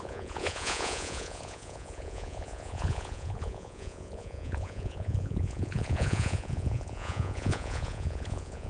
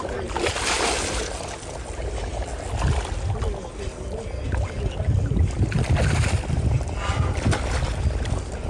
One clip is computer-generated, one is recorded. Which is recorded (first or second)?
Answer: second